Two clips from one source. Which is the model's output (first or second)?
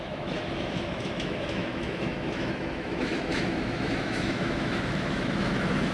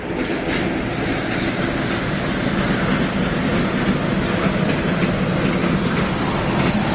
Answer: first